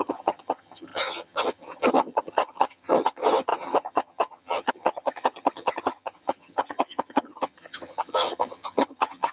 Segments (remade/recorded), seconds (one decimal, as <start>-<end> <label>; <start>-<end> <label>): 0.0-9.3 remade